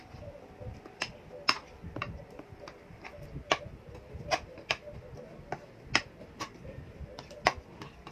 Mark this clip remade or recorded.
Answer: recorded